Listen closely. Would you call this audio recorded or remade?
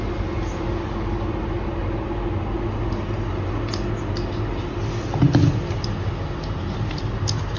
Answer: recorded